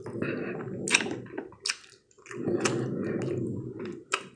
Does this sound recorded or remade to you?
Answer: recorded